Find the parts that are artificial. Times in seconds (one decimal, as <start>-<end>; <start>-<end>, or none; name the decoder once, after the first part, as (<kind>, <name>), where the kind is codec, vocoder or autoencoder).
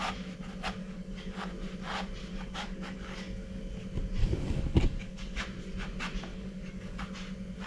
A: 0.8-1.5 (codec, DAC); 2.3-3.6; 4.2-5.4; 6.3-7.0